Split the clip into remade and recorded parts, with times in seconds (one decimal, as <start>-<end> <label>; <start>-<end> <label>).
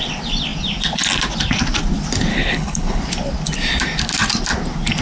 0.0-2.3 recorded; 2.3-3.0 remade; 3.0-5.0 recorded